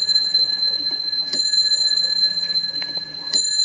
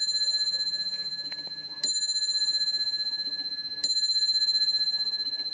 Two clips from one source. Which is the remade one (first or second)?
first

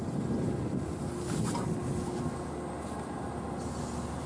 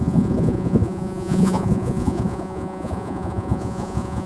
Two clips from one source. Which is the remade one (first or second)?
second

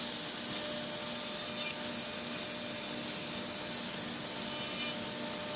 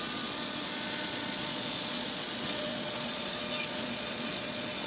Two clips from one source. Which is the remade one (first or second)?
second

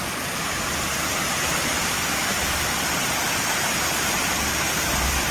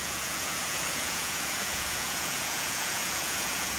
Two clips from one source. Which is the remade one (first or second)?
second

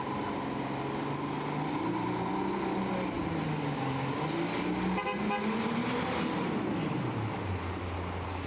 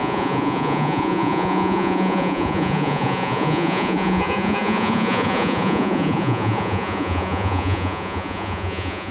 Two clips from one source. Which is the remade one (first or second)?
second